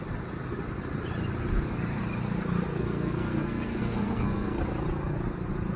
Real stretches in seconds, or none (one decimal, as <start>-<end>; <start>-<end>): 0.0-2.8; 4.6-5.8